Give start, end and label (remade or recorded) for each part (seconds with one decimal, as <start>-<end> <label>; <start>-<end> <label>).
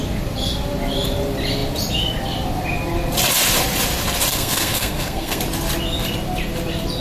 0.0-4.3 recorded; 4.3-5.4 remade; 5.4-7.0 recorded